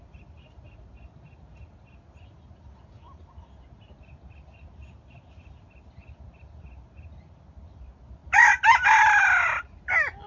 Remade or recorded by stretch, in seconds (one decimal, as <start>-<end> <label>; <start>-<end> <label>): 0.0-10.3 recorded